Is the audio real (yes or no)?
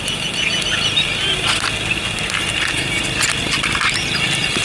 yes